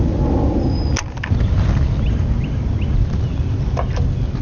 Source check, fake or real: real